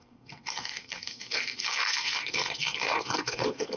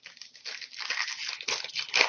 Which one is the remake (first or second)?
first